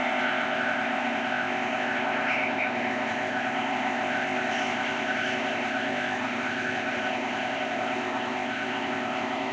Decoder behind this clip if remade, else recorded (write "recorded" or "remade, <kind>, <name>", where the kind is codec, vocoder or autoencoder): remade, codec, ZipCodec